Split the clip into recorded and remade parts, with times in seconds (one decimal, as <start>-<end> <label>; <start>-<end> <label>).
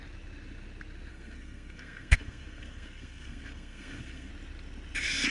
0.0-1.1 recorded; 1.1-4.3 remade; 4.3-5.3 recorded